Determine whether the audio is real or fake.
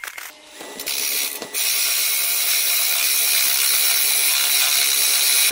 real